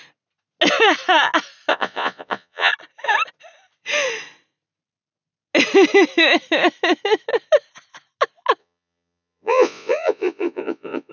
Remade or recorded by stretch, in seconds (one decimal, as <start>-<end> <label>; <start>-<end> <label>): 0.0-1.7 recorded; 1.7-2.7 remade; 2.7-8.6 recorded; 8.6-11.1 remade